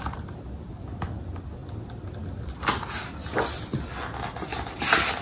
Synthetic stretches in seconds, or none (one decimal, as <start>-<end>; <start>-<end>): none